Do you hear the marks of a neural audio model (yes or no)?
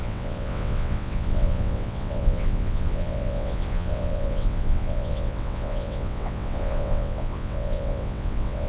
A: yes